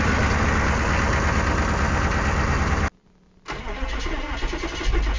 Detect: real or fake real